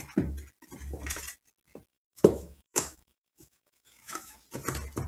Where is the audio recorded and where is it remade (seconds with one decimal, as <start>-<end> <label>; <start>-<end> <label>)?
0.0-1.9 recorded; 1.9-4.4 remade; 4.4-5.1 recorded